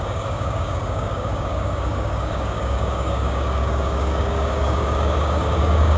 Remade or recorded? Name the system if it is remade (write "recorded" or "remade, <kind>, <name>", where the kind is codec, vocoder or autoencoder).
remade, codec, DAC